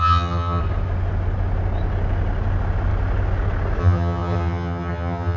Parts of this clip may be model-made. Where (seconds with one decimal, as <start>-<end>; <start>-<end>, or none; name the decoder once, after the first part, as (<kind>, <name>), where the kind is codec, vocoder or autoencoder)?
0.0-0.6 (vocoder, HiFi-GAN); 3.8-5.4